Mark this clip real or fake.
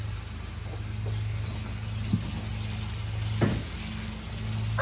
real